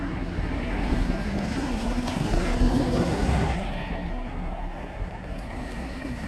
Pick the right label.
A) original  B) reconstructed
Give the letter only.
B